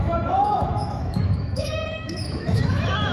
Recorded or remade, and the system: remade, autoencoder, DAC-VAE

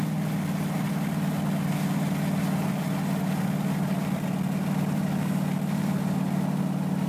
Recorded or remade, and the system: recorded